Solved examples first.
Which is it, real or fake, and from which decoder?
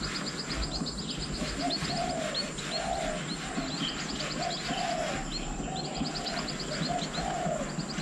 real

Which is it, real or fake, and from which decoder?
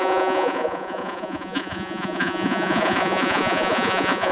fake, vocoder, Vocos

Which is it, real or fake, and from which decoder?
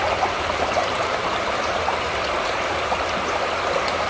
real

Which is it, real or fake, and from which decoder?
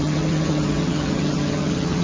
fake, vocoder, HiFi-GAN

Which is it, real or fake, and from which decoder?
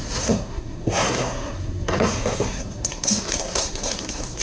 fake, codec, SNAC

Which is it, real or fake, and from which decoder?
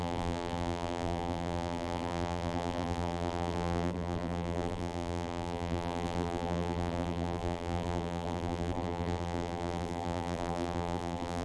fake, vocoder, BigVGAN v2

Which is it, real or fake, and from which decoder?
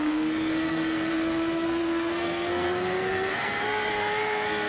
fake, codec, SNAC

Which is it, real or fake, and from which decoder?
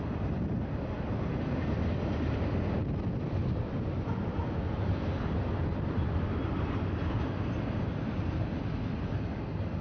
real